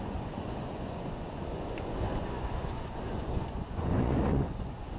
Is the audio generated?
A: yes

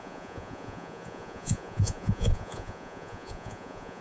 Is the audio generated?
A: yes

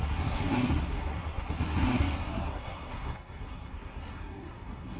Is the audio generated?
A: yes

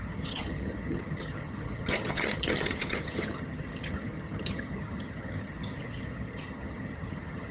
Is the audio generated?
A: yes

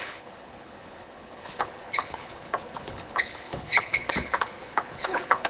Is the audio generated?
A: yes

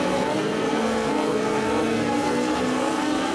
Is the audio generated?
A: yes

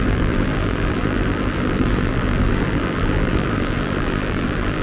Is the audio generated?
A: yes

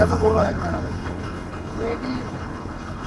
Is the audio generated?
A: yes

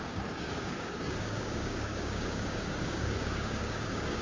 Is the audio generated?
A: yes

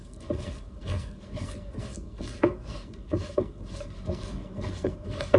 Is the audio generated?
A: yes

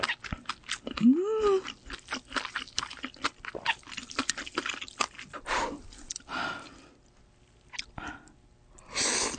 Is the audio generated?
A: no